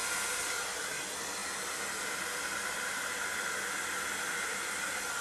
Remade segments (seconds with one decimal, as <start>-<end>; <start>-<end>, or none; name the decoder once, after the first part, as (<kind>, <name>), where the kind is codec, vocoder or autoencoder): none